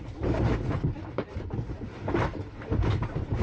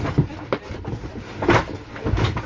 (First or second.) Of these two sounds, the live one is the second